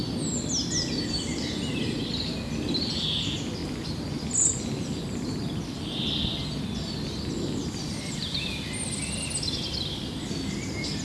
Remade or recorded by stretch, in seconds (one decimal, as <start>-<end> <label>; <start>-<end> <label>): 0.0-11.0 recorded